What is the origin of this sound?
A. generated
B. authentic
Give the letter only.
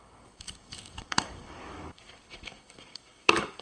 A